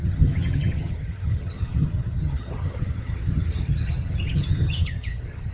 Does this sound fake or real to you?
fake